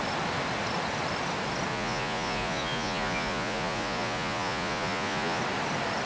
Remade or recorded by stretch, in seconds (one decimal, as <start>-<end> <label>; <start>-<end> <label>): 0.0-1.7 recorded; 1.7-5.4 remade; 5.4-6.1 recorded